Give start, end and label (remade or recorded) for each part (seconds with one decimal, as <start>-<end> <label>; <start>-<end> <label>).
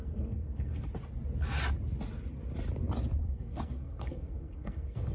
0.0-0.9 remade; 0.9-3.2 recorded; 3.2-5.1 remade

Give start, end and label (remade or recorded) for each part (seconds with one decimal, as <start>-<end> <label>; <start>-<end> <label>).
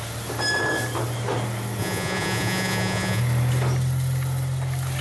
0.0-1.8 recorded; 1.8-3.2 remade; 3.2-5.0 recorded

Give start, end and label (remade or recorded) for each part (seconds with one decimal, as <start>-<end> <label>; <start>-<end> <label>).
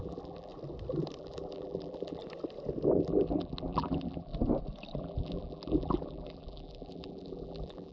0.0-0.5 remade; 0.5-1.2 recorded; 1.2-2.2 remade; 2.2-2.9 recorded; 2.9-4.3 remade; 4.3-5.0 recorded; 5.0-7.9 remade